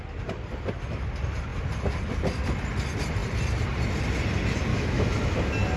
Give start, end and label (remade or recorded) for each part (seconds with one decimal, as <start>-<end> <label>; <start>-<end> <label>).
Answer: 0.0-4.7 recorded; 4.7-5.3 remade; 5.3-5.8 recorded